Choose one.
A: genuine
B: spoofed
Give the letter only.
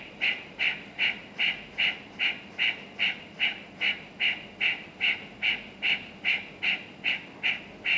A